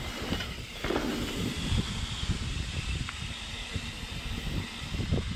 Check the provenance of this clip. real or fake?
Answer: real